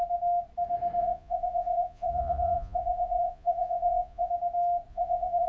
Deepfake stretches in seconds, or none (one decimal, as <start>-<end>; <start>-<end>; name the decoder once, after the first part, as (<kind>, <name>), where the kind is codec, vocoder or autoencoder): 1.0-4.3 (vocoder, Vocos); 4.9-5.5